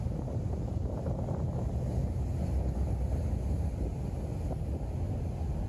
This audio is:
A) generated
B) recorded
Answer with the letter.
B